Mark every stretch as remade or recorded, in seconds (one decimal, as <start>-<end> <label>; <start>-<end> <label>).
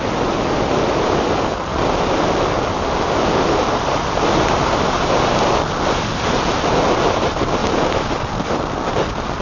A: 0.0-9.4 recorded